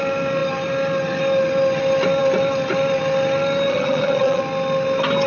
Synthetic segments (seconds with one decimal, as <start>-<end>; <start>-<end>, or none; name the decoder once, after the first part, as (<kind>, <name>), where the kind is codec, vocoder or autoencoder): 3.7-4.4 (vocoder, HiFi-GAN)